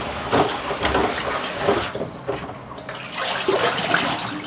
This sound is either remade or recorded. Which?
recorded